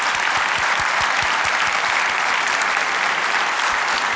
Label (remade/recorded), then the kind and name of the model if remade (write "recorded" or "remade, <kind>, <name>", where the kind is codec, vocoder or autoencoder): recorded